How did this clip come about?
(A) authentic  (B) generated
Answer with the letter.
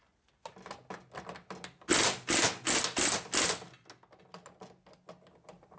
A